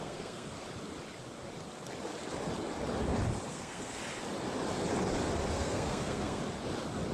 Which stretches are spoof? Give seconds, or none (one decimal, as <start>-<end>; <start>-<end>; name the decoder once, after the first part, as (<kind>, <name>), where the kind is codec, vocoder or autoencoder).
0.0-0.5 (codec, SNAC); 3.5-4.0; 5.5-6.4

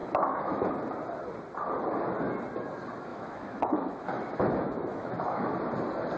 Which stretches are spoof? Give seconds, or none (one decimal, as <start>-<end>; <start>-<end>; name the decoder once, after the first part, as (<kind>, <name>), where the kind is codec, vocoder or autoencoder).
0.0-0.7 (autoencoder, DAC-VAE); 3.1-5.5